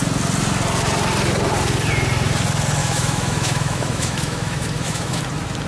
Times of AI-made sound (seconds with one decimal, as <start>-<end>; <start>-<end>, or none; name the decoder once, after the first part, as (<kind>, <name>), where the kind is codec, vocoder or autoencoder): 2.8-5.2 (autoencoder, DAC-VAE)